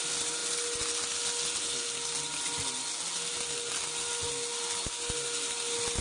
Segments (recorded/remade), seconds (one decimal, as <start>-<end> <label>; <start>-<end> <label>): 0.0-6.0 recorded